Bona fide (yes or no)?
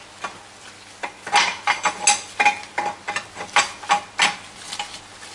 yes